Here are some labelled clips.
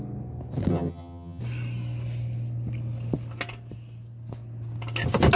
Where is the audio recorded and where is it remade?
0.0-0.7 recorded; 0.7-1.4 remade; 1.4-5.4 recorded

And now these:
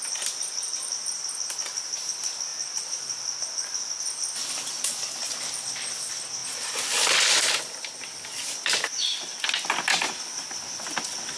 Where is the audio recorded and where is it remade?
0.0-11.4 recorded